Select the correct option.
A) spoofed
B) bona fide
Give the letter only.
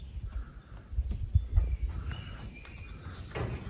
B